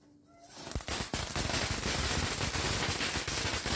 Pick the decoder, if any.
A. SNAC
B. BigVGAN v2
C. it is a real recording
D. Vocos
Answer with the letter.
C